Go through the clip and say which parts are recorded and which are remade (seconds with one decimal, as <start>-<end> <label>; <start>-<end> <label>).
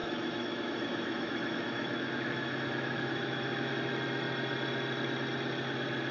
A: 0.0-3.7 remade; 3.7-6.1 recorded